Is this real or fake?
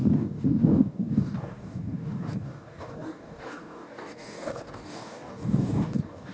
fake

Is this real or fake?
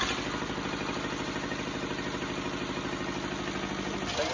real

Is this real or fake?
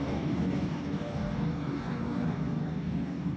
fake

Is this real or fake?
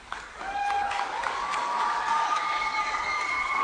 fake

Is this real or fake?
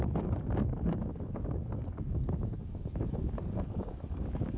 fake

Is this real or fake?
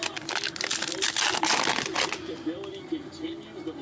real